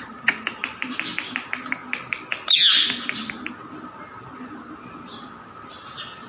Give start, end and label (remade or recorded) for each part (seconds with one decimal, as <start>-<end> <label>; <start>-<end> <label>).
0.0-6.3 recorded